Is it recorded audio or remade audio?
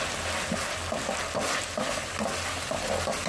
recorded